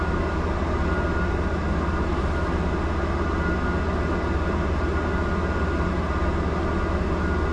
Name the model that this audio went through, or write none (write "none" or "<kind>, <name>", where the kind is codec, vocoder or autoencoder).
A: none